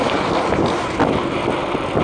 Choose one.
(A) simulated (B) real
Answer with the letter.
B